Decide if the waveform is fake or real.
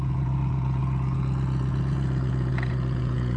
fake